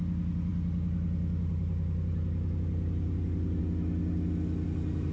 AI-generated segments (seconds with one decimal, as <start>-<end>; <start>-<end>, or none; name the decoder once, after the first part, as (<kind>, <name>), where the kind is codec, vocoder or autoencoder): none